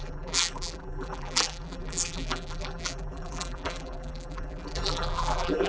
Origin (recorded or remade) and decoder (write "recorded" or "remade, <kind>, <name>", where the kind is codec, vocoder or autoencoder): remade, vocoder, BigVGAN v2